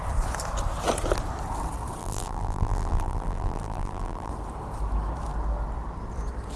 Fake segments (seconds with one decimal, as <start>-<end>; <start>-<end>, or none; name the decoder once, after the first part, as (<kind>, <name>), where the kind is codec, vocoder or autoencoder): 2.0-4.3 (vocoder, BigVGAN v2)